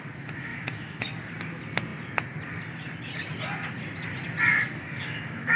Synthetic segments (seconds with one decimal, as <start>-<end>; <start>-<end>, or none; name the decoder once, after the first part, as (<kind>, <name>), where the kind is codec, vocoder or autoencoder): 0.5-1.0 (autoencoder, DAC-VAE); 4.5-5.6